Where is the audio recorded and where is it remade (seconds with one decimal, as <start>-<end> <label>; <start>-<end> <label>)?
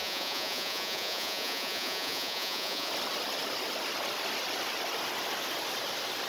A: 0.0-2.9 remade; 2.9-6.3 recorded